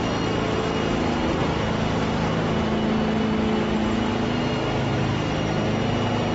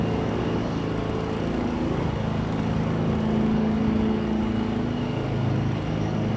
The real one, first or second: first